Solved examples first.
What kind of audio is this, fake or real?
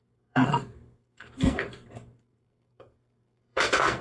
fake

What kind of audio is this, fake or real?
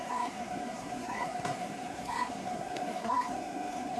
fake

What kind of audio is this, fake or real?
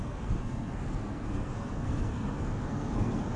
fake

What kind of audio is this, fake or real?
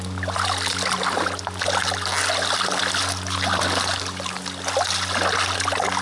real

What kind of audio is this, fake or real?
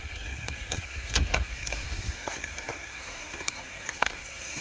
fake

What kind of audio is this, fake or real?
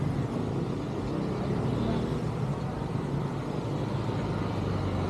real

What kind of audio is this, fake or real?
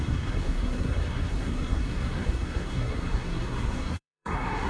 fake